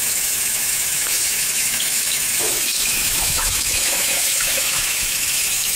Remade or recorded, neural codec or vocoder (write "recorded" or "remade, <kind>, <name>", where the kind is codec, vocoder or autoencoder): remade, autoencoder, DAC-VAE